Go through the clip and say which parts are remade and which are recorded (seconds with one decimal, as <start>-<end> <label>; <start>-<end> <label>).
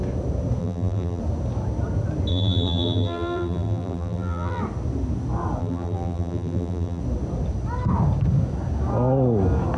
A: 0.0-0.6 recorded; 0.6-1.2 remade; 1.2-2.3 recorded; 2.3-4.6 remade; 4.6-5.6 recorded; 5.6-7.0 remade; 7.0-9.8 recorded